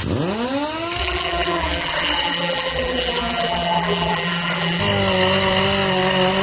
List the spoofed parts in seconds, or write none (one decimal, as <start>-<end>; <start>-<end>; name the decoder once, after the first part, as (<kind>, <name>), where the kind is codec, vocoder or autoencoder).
1.0-4.8 (vocoder, BigVGAN v2)